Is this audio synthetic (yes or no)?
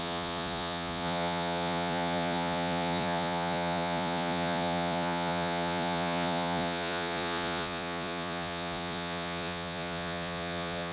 yes